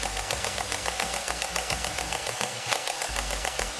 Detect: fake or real fake